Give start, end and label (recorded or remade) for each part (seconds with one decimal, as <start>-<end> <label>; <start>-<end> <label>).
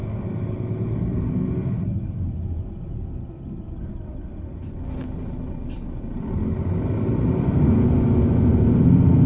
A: 0.0-9.3 recorded